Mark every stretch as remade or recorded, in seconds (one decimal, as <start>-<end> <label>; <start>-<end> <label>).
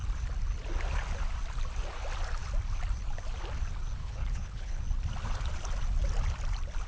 0.0-4.0 recorded; 4.0-4.8 remade; 4.8-6.9 recorded